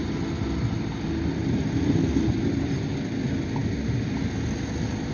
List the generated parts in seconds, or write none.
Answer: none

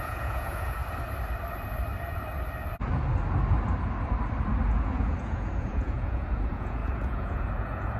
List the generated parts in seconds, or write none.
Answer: 0.0-0.8 (vocoder, Vocos); 4.7-8.0

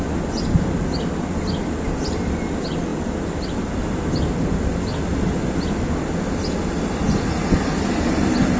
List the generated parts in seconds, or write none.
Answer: none

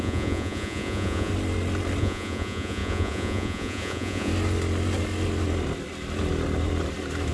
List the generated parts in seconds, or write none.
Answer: 0.0-1.3 (vocoder, Vocos); 2.0-4.3

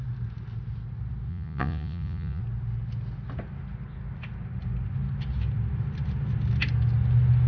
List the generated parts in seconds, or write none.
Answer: 1.3-2.4 (vocoder, Vocos)

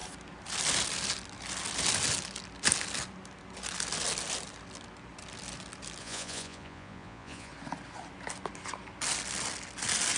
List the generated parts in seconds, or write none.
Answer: 6.0-7.5 (vocoder, Vocos)

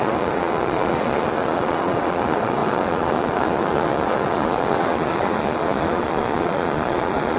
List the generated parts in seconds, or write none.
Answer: 0.0-7.4 (vocoder, Vocos)